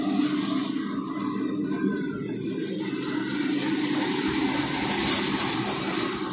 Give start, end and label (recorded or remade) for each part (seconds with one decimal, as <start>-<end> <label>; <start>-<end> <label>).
0.0-6.3 recorded